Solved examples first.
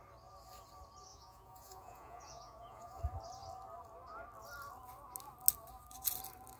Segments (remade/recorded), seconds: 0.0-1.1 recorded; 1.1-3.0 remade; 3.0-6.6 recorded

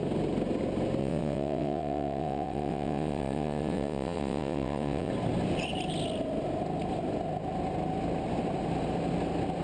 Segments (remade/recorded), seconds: 0.0-1.0 recorded; 1.0-5.1 remade; 5.1-9.6 recorded

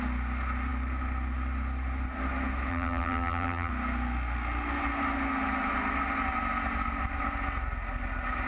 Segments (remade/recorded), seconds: 0.0-2.7 recorded; 2.7-3.7 remade; 3.7-8.5 recorded

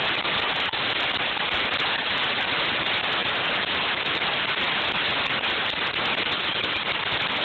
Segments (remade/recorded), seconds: 0.0-7.4 recorded

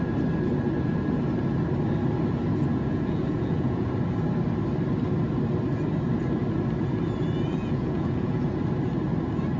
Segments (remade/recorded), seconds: 0.0-2.7 recorded; 2.7-3.9 remade; 3.9-7.5 recorded; 7.5-8.5 remade; 8.5-9.6 recorded

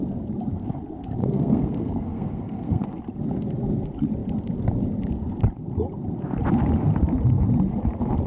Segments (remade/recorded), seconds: 0.0-1.2 recorded; 1.2-3.0 remade; 3.0-8.3 recorded

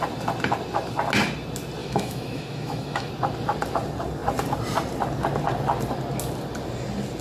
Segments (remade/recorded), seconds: 0.0-1.8 recorded; 1.8-3.1 remade; 3.1-7.2 recorded

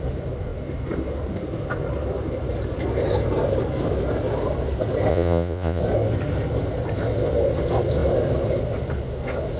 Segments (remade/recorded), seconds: 0.0-5.1 recorded; 5.1-5.8 remade; 5.8-9.6 recorded